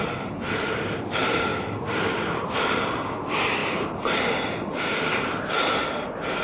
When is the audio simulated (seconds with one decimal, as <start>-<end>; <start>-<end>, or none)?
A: 0.0-1.5; 2.1-6.4